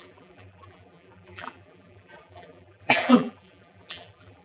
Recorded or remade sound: remade